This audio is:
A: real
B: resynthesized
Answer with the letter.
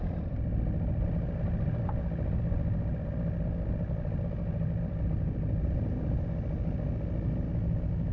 A